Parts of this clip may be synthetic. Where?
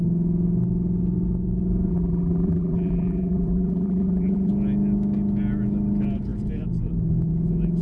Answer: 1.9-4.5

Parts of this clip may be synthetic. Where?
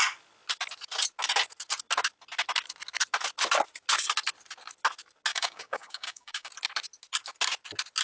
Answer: 5.3-6.5